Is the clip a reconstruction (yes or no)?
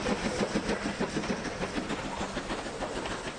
no